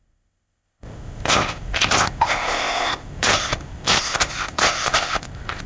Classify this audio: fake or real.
fake